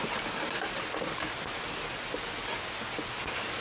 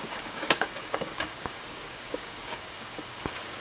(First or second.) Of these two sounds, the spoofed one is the second